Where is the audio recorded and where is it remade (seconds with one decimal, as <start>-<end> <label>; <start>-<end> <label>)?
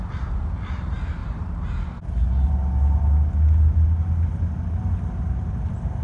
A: 0.0-6.0 recorded